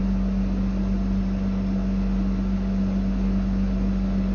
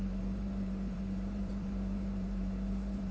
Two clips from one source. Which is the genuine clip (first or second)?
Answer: first